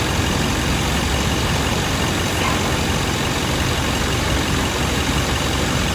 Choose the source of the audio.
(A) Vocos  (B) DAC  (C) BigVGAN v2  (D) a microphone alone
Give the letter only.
D